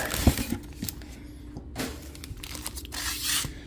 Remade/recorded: recorded